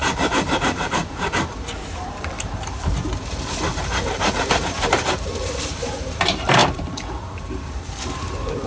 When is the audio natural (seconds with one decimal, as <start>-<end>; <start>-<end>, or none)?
none